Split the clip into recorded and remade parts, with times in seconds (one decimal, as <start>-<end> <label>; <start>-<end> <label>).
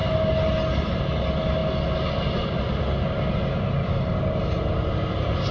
0.0-5.5 recorded